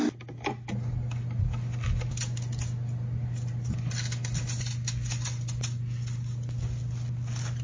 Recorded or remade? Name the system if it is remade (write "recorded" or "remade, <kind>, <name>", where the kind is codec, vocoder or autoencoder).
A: recorded